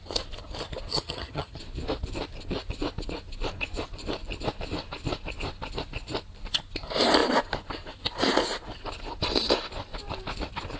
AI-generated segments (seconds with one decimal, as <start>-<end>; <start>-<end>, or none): 0.9-1.6